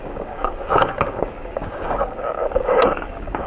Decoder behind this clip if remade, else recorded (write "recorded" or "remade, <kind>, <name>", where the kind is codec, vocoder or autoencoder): remade, codec, DAC